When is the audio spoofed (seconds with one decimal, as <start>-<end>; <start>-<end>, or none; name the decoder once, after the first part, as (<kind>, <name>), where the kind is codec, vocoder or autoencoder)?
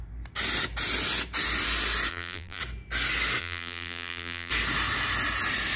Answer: 2.1-2.6 (vocoder, BigVGAN v2); 3.4-4.5